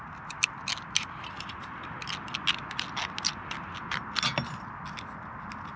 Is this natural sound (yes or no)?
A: yes